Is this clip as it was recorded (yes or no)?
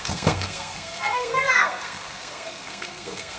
no